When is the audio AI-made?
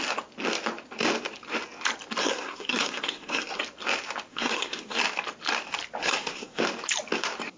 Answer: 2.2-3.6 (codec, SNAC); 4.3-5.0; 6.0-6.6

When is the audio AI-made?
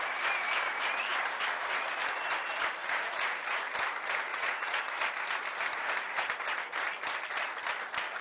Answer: 2.8-3.7 (vocoder, Vocos); 4.3-4.8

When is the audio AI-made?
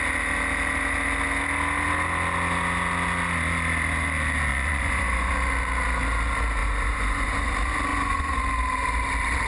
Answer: 4.5-5.3 (vocoder, Vocos); 6.6-7.5; 7.9-8.4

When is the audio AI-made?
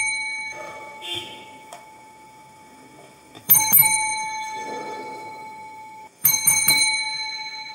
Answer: 0.0-7.7 (autoencoder, DAC-VAE)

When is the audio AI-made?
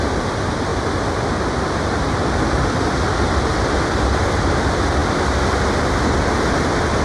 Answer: none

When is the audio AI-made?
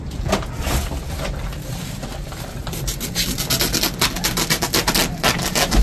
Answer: 2.6-3.3 (vocoder, BigVGAN v2)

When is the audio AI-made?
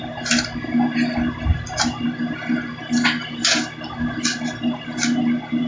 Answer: none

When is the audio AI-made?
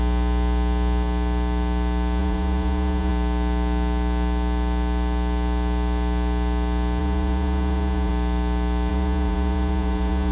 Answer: 2.2-3.1 (vocoder, Vocos); 7.0-8.1; 8.9-10.3